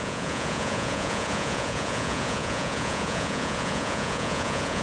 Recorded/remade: remade